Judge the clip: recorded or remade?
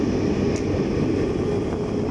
recorded